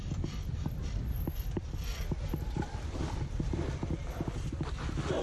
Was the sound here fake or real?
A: fake